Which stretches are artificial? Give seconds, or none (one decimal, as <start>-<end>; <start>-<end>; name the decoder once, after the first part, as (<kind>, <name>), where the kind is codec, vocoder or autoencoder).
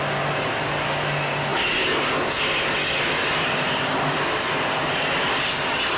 none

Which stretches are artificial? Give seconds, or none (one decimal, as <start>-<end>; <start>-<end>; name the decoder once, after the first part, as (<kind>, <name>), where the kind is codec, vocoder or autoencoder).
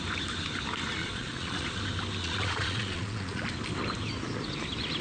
1.0-1.8 (vocoder, Vocos); 2.2-3.4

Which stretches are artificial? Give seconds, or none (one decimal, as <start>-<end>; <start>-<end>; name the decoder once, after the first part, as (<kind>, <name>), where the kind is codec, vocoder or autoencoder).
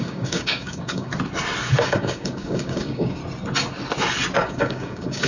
0.0-1.1 (codec, DAC); 1.8-3.2; 4.4-5.3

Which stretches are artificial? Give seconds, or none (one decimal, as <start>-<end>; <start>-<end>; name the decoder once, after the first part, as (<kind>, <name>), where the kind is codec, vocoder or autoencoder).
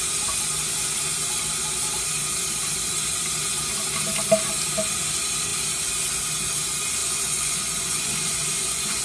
7.0-9.0 (vocoder, Vocos)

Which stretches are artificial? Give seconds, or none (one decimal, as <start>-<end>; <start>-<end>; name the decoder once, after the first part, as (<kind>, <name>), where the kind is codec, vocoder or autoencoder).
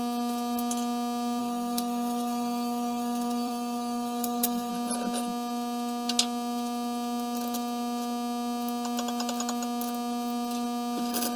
1.4-4.7 (codec, SNAC)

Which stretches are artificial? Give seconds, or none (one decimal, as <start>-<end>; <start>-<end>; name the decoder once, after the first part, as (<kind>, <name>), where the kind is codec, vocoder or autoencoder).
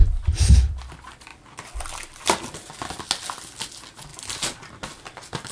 0.0-0.9 (vocoder, BigVGAN v2); 1.3-2.2; 4.1-5.5